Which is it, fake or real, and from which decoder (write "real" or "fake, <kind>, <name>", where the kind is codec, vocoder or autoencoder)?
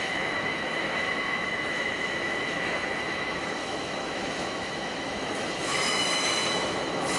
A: fake, autoencoder, DAC-VAE